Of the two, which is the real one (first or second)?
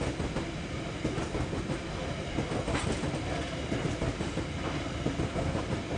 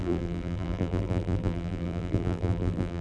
first